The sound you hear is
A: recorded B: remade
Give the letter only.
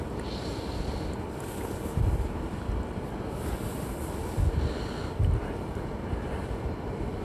A